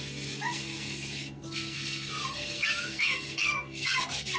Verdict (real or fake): fake